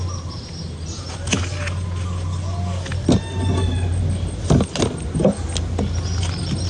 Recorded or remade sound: recorded